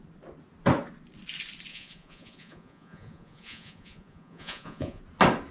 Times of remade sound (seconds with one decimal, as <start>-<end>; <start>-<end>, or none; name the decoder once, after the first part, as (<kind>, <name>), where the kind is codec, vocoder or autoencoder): 1.7-5.0 (vocoder, Vocos)